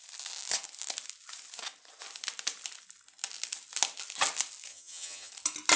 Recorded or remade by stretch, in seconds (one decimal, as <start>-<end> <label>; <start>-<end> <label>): 0.0-4.7 recorded; 4.7-5.3 remade; 5.3-5.8 recorded